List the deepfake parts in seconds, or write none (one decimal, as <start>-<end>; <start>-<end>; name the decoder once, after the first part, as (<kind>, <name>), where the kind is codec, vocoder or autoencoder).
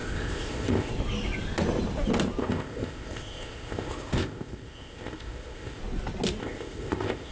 0.0-0.9 (codec, ZipCodec); 2.4-5.8; 6.4-7.3